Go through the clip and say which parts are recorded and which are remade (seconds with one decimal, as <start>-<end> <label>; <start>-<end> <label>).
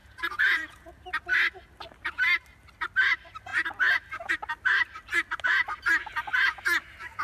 0.0-0.9 remade; 0.9-7.2 recorded